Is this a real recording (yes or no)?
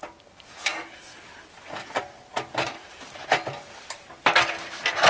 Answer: yes